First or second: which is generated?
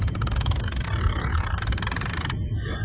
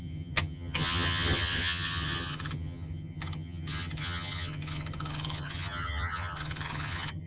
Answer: second